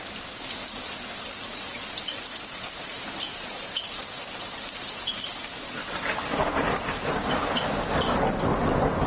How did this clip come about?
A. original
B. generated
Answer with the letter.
A